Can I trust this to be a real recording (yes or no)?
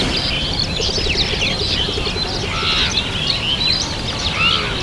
yes